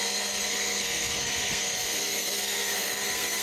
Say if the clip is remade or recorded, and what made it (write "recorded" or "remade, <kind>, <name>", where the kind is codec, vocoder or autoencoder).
remade, codec, SNAC